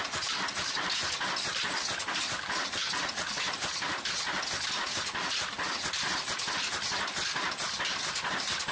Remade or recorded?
recorded